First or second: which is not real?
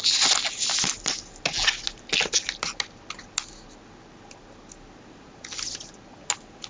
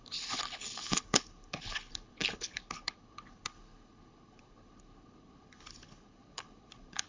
second